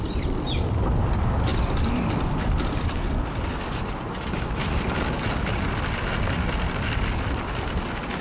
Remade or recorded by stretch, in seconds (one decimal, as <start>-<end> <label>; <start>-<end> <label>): 0.0-8.2 recorded